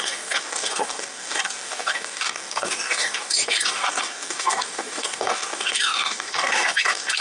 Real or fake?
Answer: fake